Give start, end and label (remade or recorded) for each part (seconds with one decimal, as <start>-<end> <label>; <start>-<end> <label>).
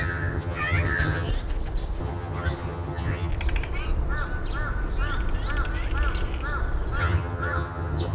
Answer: 0.0-1.3 remade; 1.3-2.0 recorded; 2.0-3.3 remade; 3.3-7.0 recorded; 7.0-8.1 remade